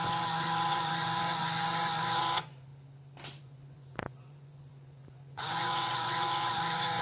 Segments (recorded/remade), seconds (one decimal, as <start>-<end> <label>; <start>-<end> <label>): 0.0-2.7 remade; 2.7-3.4 recorded; 3.4-7.0 remade

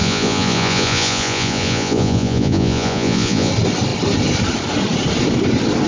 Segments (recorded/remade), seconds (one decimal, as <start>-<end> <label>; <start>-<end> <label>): 0.0-3.5 remade; 3.5-5.9 recorded

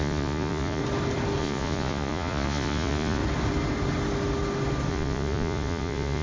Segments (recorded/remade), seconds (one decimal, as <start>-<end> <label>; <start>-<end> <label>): 0.0-0.8 remade; 0.8-1.4 recorded; 1.4-3.2 remade; 3.2-4.9 recorded; 4.9-6.2 remade

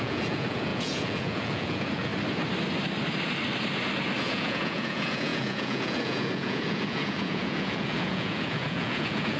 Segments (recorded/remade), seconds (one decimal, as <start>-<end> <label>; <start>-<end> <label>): 0.0-2.1 remade; 2.1-4.2 recorded; 4.2-9.4 remade

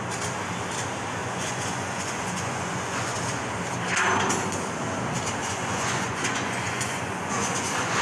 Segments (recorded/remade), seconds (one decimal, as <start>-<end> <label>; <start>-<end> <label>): 0.0-1.2 recorded; 1.2-3.4 remade; 3.4-5.4 recorded; 5.4-8.0 remade

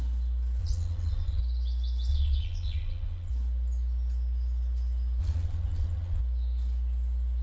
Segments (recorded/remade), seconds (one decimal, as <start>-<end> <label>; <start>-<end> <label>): 0.0-0.6 recorded; 0.6-1.4 remade; 1.4-2.1 recorded; 2.1-3.3 remade; 3.3-5.2 recorded; 5.2-6.2 remade; 6.2-7.4 recorded